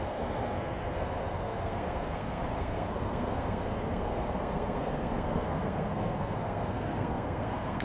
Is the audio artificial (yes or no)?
yes